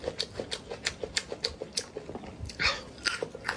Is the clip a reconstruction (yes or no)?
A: no